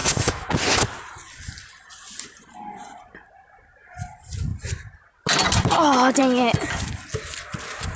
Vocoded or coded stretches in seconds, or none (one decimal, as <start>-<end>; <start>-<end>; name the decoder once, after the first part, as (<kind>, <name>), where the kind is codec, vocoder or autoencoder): 0.0-0.5 (autoencoder, DAC-VAE)